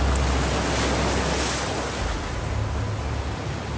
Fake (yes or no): no